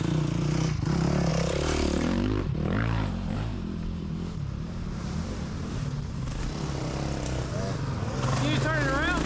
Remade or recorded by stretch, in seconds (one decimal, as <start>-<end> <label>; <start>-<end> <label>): 0.0-1.3 recorded; 1.3-6.4 remade; 6.4-9.3 recorded